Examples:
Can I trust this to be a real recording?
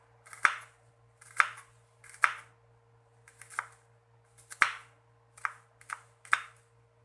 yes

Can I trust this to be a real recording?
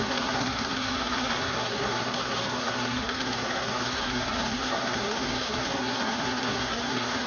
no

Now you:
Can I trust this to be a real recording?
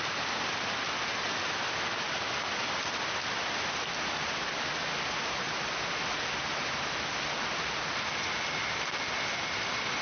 yes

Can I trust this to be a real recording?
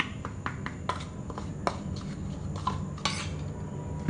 yes